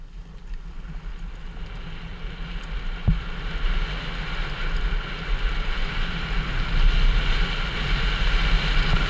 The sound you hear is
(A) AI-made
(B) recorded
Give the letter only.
B